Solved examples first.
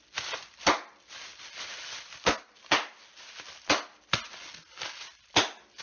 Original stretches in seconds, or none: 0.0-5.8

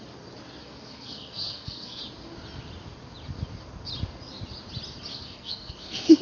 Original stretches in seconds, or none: 0.0-0.6; 2.0-5.1

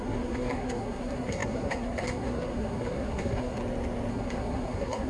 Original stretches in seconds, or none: 3.6-4.1

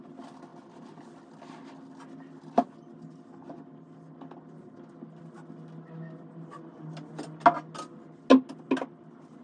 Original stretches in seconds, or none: 0.0-9.4

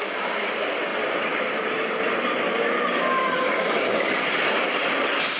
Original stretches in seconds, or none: 0.0-3.2; 4.1-5.4

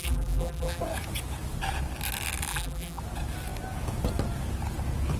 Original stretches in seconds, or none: 0.8-2.5; 3.0-5.2

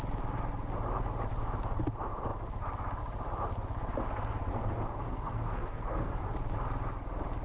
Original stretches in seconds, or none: 0.0-4.5; 6.1-7.4

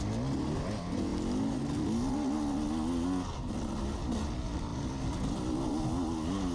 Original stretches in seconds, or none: 0.0-6.5